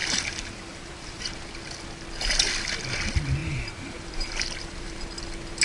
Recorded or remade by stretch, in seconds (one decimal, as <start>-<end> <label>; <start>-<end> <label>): 0.0-1.2 remade; 1.2-3.4 recorded; 3.4-5.0 remade; 5.0-5.6 recorded